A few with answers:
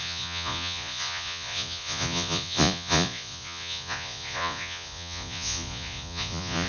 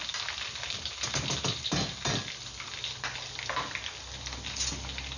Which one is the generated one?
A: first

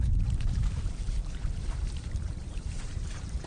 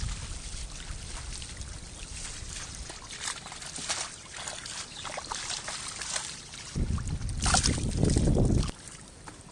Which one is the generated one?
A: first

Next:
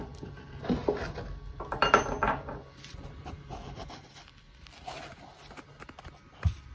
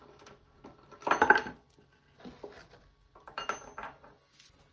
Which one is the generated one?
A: first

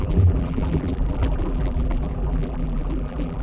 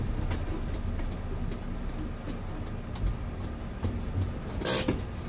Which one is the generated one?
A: first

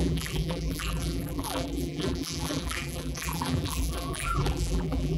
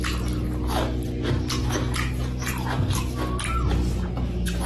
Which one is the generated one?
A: first